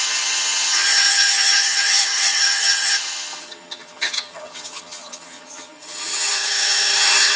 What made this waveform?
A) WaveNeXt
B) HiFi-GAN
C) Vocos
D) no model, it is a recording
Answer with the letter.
B